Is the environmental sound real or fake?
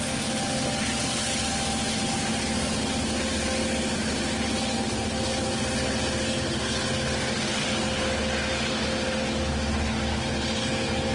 real